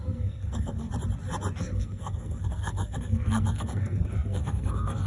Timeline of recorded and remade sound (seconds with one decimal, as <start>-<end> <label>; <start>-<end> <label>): 0.0-0.9 remade; 0.9-1.6 recorded; 1.6-5.1 remade